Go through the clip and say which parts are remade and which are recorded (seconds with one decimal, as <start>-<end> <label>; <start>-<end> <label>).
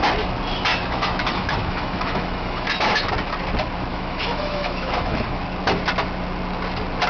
0.0-0.7 recorded; 0.7-3.1 remade; 3.1-3.9 recorded; 3.9-5.4 remade; 5.4-7.1 recorded